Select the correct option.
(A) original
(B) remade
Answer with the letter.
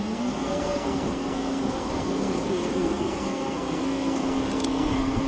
B